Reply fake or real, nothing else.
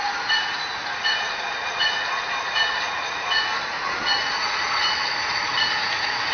fake